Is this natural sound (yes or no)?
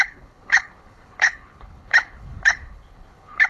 no